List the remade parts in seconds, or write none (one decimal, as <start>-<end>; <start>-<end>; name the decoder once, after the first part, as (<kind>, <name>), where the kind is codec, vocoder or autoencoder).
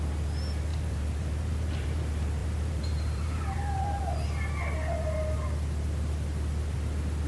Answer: 0.7-2.0 (vocoder, BigVGAN v2); 2.4-4.0